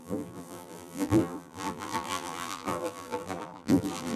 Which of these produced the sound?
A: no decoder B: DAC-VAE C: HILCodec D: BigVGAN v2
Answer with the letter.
D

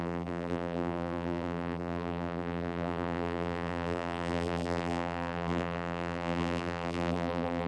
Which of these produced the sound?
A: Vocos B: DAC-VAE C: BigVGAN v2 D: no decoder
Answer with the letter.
C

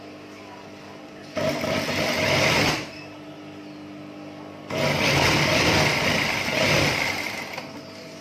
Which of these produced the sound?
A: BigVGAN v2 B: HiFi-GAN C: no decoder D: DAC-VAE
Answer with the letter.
C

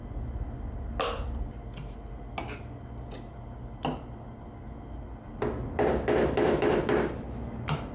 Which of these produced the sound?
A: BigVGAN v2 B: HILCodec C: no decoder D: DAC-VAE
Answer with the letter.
C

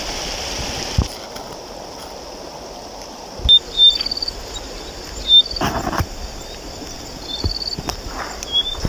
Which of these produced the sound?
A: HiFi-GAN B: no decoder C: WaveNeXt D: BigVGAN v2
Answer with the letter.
B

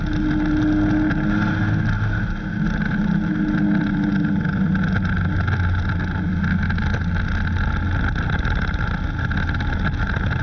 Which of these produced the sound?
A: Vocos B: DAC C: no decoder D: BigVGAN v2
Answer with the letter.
C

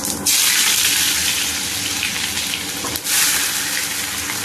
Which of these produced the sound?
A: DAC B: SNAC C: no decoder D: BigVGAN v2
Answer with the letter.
C